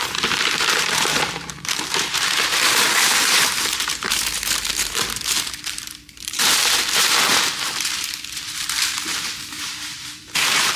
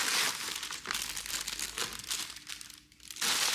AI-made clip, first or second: first